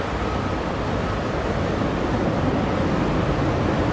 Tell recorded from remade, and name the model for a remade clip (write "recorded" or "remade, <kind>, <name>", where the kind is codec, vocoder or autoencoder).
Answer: recorded